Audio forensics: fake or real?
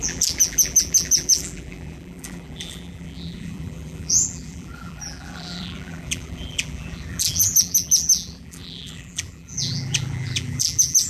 fake